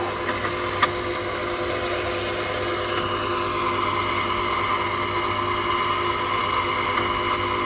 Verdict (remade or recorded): recorded